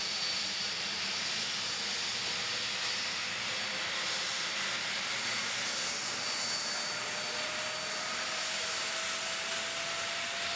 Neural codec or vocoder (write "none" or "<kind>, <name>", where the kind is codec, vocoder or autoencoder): none